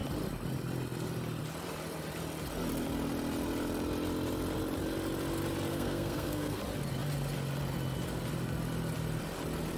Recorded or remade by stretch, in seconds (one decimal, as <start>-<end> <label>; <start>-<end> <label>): 0.0-5.7 recorded; 5.7-6.6 remade; 6.6-9.8 recorded